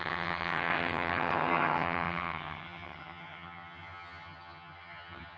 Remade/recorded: remade